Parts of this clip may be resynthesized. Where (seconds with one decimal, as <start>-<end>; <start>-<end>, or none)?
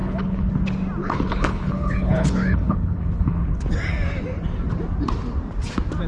0.0-0.5; 1.0-3.6